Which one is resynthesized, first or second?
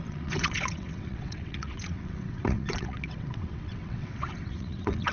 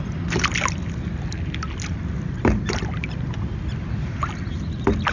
first